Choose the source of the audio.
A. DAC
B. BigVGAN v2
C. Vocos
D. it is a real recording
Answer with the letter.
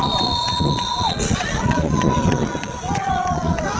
C